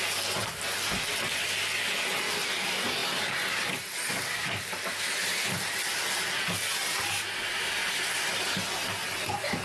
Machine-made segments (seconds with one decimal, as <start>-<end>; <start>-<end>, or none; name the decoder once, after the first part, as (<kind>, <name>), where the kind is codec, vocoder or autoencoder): 7.8-8.4 (vocoder, BigVGAN v2)